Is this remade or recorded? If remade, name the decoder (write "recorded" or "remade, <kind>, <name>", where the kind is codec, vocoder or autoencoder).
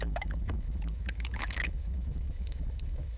remade, autoencoder, DAC-VAE